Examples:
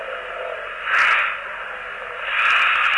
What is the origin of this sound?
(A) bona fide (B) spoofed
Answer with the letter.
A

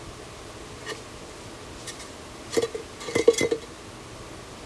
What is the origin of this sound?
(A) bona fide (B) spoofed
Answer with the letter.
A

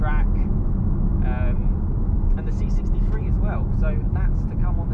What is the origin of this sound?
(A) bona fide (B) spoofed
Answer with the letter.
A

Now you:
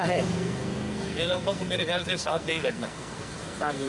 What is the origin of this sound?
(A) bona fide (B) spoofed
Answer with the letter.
B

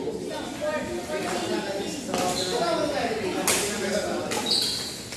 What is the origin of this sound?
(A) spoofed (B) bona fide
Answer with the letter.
B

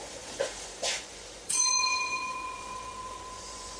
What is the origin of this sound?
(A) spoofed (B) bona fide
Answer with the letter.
A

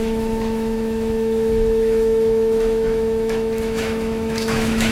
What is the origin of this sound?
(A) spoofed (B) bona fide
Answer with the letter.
A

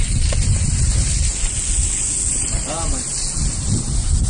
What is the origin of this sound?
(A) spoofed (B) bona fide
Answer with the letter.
B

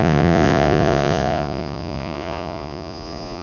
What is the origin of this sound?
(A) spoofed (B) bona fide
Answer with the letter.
A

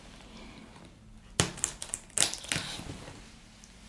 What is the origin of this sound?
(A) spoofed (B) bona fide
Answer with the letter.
B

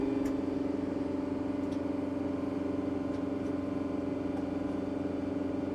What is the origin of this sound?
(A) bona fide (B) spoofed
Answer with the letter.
A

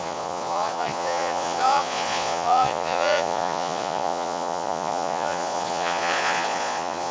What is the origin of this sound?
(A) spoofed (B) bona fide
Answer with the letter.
A